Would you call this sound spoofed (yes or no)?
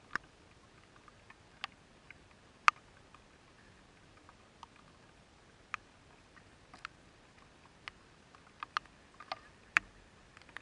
no